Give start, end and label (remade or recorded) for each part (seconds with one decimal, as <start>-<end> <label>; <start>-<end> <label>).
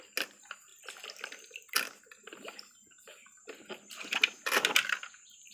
0.0-5.5 recorded